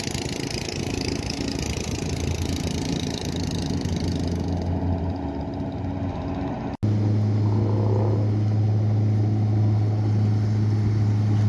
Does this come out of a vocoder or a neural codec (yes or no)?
no